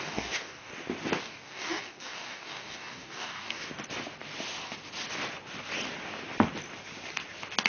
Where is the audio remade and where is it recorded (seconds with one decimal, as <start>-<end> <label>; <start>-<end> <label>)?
0.0-0.7 remade; 0.7-1.2 recorded; 1.2-3.7 remade; 3.7-7.7 recorded